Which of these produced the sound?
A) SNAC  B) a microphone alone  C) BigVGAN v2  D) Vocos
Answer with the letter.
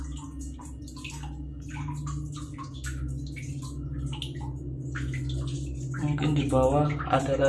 B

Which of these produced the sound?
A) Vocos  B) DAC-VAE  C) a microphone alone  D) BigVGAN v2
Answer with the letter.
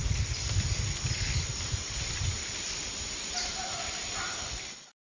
C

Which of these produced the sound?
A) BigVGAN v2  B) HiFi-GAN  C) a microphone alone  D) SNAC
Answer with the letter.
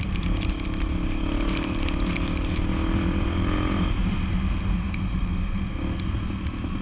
C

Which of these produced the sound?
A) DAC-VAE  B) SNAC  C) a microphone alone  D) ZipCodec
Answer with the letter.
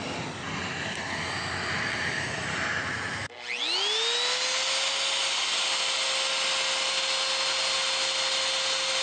C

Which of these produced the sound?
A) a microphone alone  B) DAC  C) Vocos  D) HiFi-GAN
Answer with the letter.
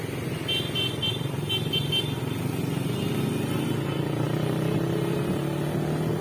A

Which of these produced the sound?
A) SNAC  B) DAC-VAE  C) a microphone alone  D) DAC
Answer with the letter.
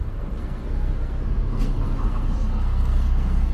A